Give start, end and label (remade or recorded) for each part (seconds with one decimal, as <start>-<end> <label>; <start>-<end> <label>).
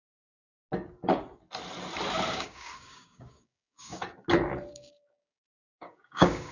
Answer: 0.0-2.3 recorded; 2.3-4.0 remade; 4.0-4.7 recorded; 4.7-6.5 remade